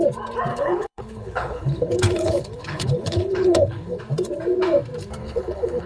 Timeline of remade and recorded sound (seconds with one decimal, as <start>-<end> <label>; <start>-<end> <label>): 0.0-0.5 recorded; 0.5-4.0 remade; 4.0-5.2 recorded; 5.2-5.9 remade